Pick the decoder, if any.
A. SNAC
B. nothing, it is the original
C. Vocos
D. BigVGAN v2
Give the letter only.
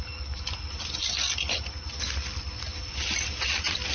B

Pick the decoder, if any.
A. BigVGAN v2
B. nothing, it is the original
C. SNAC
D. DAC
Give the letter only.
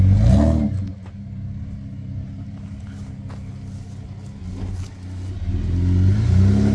B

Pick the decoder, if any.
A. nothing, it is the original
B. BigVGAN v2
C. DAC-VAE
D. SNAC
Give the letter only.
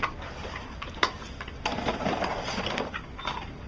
A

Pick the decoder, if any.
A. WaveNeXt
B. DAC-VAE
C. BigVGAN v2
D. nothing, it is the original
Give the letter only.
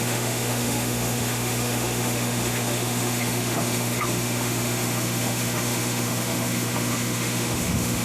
B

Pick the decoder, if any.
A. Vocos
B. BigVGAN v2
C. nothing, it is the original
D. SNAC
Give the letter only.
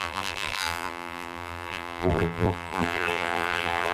B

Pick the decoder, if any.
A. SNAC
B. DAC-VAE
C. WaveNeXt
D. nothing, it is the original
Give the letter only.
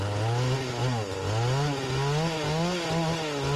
D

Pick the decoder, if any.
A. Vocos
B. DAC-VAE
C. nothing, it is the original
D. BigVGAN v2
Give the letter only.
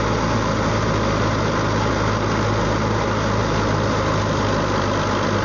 C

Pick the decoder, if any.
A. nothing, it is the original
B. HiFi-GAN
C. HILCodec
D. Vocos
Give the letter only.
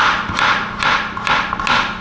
A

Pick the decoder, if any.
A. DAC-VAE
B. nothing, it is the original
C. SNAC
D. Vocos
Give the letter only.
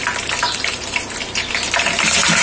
B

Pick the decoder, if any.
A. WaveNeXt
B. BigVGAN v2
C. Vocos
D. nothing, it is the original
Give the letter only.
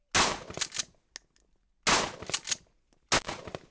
D